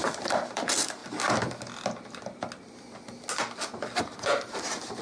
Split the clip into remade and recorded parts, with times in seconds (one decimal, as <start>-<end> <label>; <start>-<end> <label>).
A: 0.0-1.0 remade; 1.0-4.0 recorded; 4.0-5.0 remade